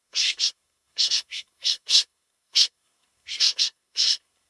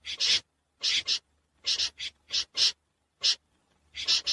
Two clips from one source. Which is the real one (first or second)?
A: second